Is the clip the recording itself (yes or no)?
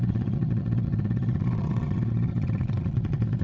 no